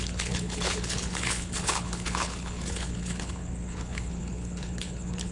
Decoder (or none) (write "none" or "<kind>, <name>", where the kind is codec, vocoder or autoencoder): codec, HILCodec